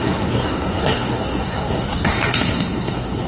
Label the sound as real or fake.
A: fake